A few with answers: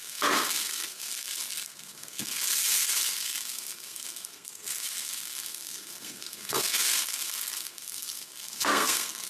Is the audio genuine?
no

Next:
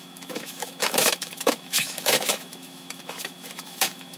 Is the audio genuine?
no